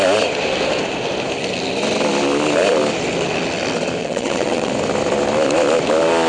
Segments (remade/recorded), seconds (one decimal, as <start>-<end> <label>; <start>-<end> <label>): 0.0-4.0 recorded; 4.0-4.7 remade; 4.7-6.3 recorded